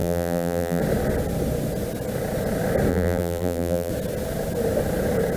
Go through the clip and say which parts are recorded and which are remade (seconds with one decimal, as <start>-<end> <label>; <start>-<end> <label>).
0.0-0.8 remade; 0.8-2.9 recorded; 2.9-3.9 remade; 3.9-5.4 recorded